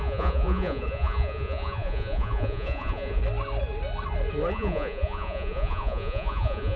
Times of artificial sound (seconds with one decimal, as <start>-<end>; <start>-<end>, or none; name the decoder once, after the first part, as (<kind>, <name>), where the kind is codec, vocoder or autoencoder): 0.0-3.2 (vocoder, Vocos); 4.5-6.8